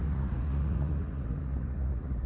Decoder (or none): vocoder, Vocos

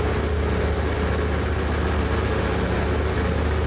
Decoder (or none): none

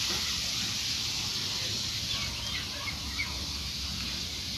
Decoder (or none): none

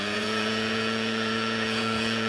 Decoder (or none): vocoder, Vocos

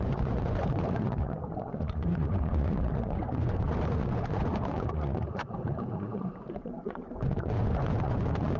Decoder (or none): vocoder, Vocos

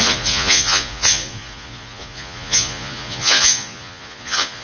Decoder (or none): vocoder, Vocos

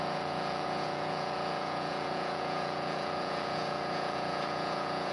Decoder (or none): vocoder, Vocos